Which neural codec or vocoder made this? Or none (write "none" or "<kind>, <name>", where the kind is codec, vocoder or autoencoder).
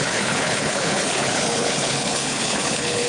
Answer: codec, HILCodec